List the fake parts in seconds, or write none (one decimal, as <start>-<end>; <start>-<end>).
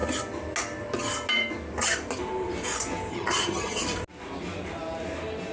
3.1-3.8